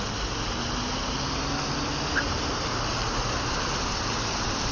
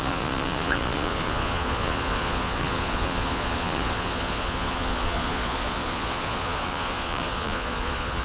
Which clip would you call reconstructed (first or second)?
second